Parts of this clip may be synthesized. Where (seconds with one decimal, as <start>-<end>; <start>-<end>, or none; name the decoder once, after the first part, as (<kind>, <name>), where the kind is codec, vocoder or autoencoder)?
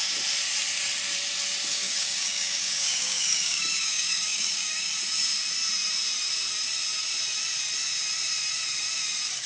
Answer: 1.7-4.9 (codec, DAC)